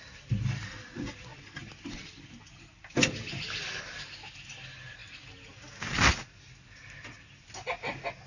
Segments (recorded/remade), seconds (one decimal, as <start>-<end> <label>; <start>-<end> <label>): 0.0-8.3 recorded